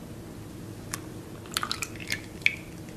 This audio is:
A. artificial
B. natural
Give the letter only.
B